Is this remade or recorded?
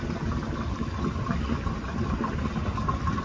recorded